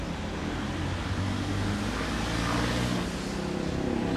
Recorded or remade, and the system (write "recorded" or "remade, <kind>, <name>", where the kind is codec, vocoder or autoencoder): recorded